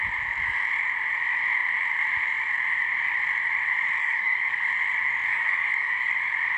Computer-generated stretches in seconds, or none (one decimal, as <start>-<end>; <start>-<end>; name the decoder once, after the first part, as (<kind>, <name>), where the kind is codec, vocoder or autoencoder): 4.0-4.5 (codec, DAC); 5.3-6.1